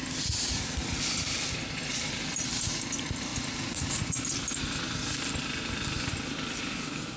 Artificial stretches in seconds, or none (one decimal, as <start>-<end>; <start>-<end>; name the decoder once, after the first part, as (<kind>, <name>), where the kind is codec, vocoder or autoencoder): none